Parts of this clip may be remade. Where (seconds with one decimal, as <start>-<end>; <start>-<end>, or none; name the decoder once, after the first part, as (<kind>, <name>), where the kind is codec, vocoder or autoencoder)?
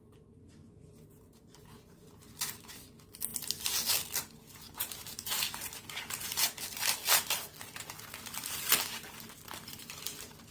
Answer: none